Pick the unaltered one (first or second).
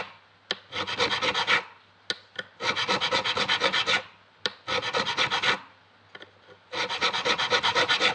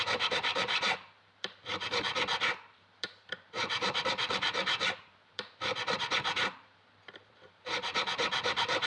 first